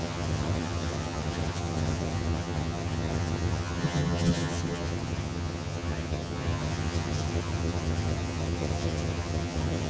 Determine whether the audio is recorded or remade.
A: remade